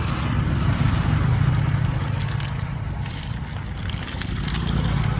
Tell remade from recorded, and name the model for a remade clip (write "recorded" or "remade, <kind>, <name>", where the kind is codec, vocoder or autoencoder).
recorded